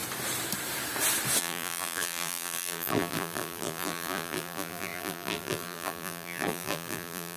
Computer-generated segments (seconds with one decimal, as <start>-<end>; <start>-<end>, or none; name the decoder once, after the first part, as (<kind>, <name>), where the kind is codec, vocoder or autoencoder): 1.4-7.4 (vocoder, BigVGAN v2)